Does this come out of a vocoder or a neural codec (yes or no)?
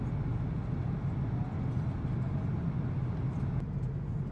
no